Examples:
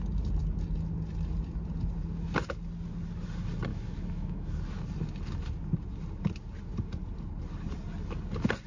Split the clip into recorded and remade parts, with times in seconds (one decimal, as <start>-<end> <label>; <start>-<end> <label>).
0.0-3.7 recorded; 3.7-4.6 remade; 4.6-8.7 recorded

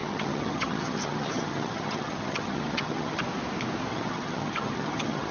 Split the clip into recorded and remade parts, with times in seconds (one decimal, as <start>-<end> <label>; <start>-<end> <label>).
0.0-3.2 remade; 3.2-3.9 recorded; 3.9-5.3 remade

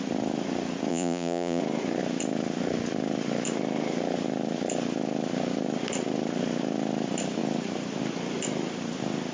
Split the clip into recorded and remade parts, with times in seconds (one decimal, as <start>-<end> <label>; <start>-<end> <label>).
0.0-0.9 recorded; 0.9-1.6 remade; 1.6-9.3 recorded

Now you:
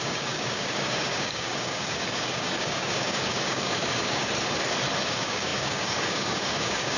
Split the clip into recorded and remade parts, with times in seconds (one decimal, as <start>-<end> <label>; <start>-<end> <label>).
0.0-4.3 remade; 4.3-5.1 recorded; 5.1-7.0 remade

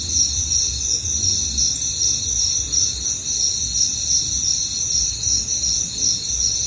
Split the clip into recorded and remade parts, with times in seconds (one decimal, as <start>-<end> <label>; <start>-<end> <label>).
0.0-1.1 recorded; 1.1-4.8 remade; 4.8-6.7 recorded

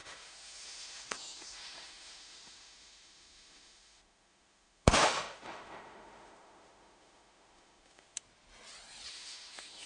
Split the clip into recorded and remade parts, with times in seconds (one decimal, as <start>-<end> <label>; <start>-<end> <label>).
0.0-8.2 remade; 8.2-9.1 recorded; 9.1-9.9 remade

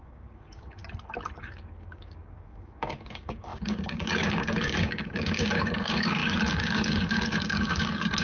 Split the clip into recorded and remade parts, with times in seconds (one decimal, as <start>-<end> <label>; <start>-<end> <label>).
0.0-0.8 remade; 0.8-1.4 recorded; 1.4-8.2 remade

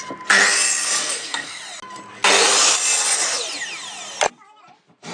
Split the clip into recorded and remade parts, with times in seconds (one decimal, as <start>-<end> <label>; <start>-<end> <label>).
0.0-1.0 recorded; 1.0-1.6 remade; 1.6-5.1 recorded